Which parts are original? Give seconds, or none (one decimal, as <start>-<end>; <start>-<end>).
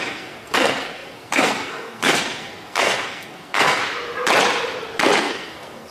3.8-5.2